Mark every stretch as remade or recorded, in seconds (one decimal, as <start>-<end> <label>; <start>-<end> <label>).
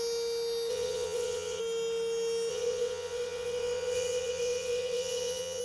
0.0-0.7 recorded; 0.7-1.6 remade; 1.6-2.5 recorded; 2.5-5.6 remade